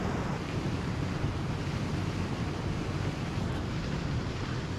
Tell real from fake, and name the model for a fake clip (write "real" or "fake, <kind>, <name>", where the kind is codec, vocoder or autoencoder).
real